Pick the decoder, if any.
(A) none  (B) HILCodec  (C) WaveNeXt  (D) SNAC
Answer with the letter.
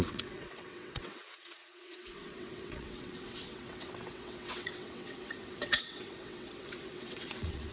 C